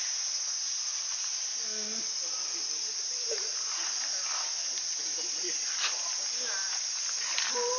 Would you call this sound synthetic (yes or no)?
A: no